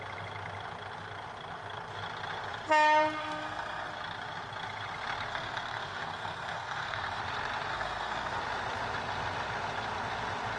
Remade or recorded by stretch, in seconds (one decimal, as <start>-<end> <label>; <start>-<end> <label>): 0.0-3.2 recorded; 3.2-3.9 remade; 3.9-5.3 recorded; 5.3-7.2 remade; 7.2-7.7 recorded; 7.7-8.4 remade; 8.4-10.6 recorded